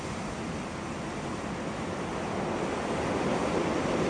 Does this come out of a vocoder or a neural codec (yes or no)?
no